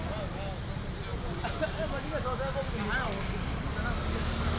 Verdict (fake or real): real